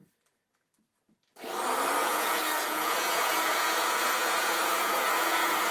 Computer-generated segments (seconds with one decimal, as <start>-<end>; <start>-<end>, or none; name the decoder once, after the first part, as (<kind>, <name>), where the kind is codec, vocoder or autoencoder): 2.0-5.7 (vocoder, Vocos)